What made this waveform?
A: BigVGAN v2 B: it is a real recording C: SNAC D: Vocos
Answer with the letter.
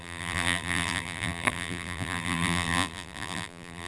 A